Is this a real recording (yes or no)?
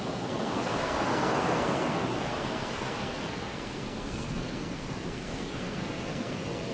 no